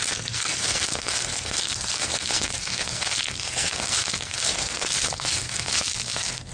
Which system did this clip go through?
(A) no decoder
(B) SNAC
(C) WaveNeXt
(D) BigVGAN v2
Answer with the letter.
B